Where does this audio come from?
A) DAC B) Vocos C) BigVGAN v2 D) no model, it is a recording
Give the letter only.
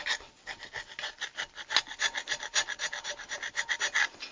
D